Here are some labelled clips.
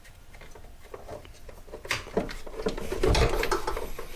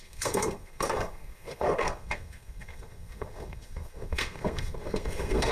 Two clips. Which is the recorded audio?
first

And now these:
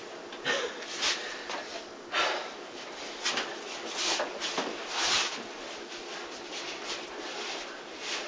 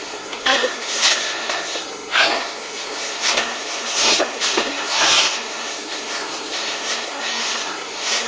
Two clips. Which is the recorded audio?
first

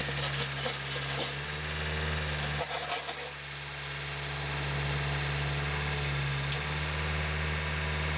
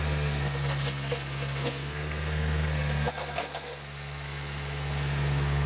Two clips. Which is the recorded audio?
first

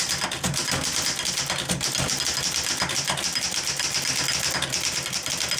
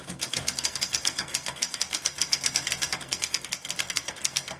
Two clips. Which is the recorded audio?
first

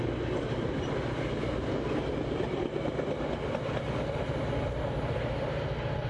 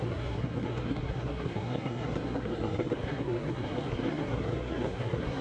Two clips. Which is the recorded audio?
first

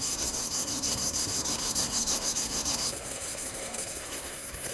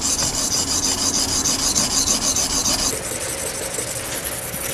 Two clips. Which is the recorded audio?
second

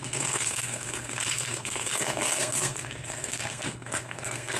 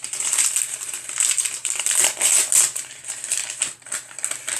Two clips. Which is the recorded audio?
second